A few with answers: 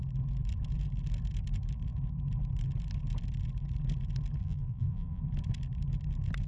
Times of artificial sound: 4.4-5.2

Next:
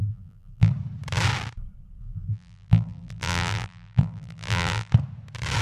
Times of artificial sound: 0.0-0.7; 2.0-4.9